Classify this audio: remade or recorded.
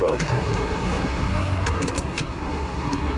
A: remade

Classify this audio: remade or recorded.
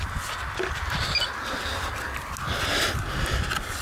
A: recorded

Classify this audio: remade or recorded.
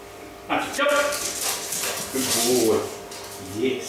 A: recorded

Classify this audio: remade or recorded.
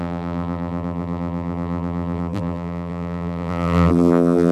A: remade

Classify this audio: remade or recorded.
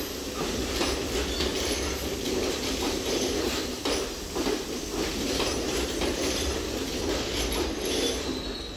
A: recorded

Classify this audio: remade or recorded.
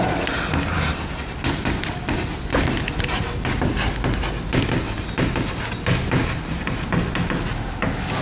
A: recorded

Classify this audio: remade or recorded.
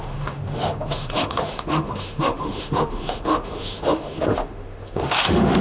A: remade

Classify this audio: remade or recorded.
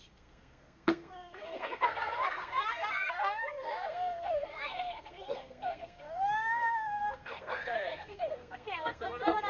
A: remade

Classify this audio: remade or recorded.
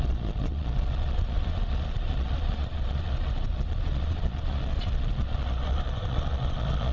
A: remade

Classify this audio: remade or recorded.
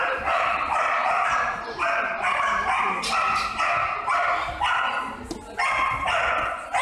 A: recorded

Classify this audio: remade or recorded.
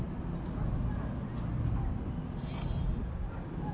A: recorded